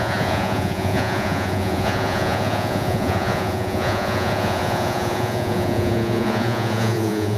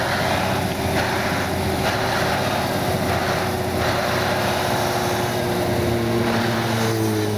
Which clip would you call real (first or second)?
second